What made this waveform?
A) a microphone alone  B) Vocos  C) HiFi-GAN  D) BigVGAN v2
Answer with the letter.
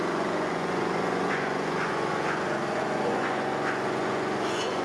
B